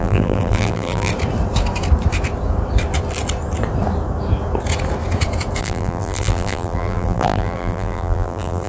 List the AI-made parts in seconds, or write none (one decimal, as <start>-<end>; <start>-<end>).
0.0-1.1; 5.6-8.7